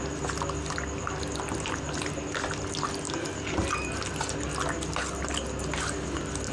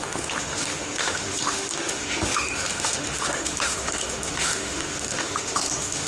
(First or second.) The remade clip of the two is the second